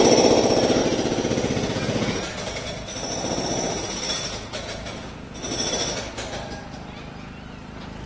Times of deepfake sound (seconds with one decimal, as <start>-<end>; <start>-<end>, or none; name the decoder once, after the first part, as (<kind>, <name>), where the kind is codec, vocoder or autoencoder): 0.8-5.4 (vocoder, Vocos)